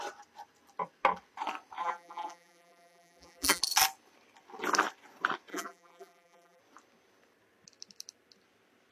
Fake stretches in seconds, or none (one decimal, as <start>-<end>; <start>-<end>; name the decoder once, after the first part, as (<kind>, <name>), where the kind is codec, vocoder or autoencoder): 1.8-3.6 (vocoder, BigVGAN v2); 5.5-6.6